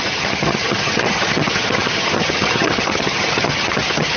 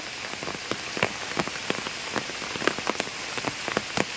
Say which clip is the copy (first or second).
first